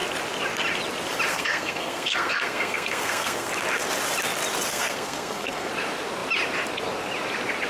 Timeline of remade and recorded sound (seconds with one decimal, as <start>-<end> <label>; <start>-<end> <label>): 0.0-1.3 recorded; 1.3-3.5 remade; 3.5-4.7 recorded; 4.7-5.7 remade; 5.7-7.7 recorded